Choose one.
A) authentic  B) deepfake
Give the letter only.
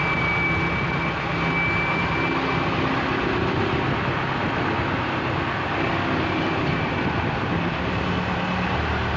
A